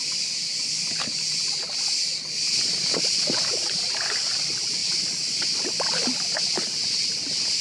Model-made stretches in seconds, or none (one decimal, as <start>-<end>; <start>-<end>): none